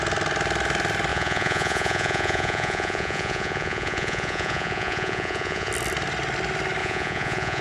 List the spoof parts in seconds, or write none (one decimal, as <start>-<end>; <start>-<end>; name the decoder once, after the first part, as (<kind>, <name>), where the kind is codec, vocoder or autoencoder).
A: 1.1-5.7 (vocoder, Vocos); 6.8-7.6